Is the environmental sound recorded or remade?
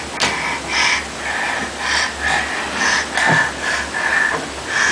recorded